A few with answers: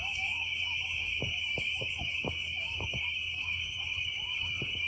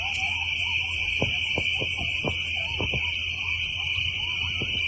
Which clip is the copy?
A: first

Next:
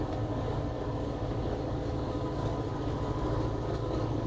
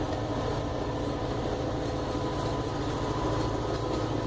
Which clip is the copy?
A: first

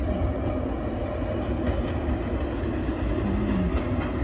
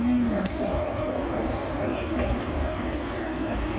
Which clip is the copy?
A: second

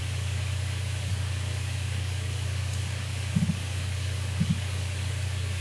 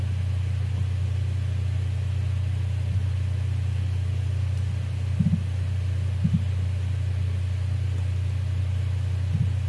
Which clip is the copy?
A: first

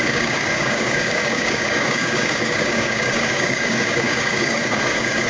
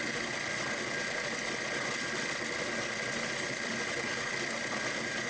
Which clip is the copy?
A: first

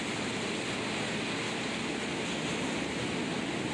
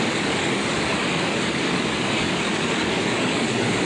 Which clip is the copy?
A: second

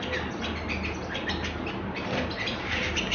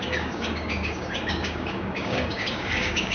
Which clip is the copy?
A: second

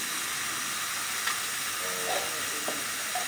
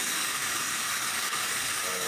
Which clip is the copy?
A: second